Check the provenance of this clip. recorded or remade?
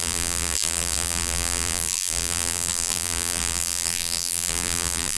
remade